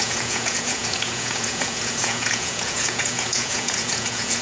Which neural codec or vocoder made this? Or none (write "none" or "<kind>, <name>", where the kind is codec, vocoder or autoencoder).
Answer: vocoder, Vocos